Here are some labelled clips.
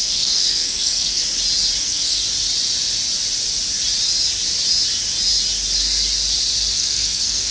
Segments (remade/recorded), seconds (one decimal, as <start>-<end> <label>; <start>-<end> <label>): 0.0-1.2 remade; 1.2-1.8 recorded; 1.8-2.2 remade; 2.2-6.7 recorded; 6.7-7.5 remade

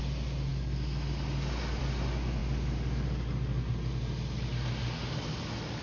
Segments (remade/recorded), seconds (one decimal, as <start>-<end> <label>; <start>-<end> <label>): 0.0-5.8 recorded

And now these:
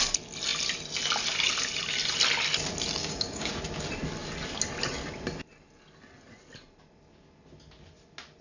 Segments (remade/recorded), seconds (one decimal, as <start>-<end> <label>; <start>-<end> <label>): 0.0-3.0 recorded; 3.0-3.5 remade; 3.5-8.4 recorded

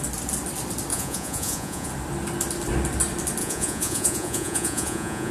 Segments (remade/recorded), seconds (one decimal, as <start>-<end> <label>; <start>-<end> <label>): 0.0-0.9 recorded; 0.9-1.9 remade; 1.9-3.4 recorded; 3.4-5.3 remade

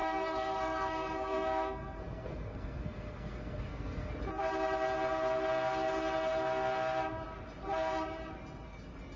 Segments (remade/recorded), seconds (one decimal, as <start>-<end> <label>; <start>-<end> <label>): 0.0-4.1 remade; 4.1-9.2 recorded

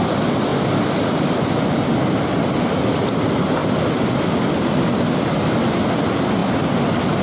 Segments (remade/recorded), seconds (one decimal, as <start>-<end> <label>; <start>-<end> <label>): 0.0-7.2 recorded

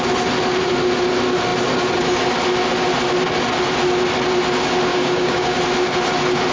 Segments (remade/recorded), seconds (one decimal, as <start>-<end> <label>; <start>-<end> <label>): 0.0-4.9 recorded; 4.9-5.6 remade; 5.6-6.5 recorded